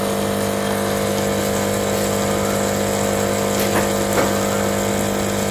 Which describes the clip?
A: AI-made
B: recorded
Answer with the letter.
B